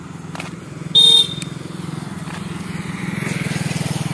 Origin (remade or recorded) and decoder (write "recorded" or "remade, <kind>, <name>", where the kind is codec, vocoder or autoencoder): recorded